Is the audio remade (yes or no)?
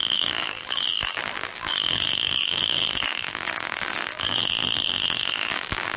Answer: yes